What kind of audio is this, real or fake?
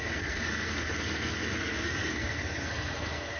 fake